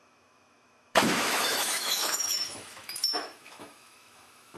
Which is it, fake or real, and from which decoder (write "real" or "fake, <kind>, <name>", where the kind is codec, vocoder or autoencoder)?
fake, autoencoder, DAC-VAE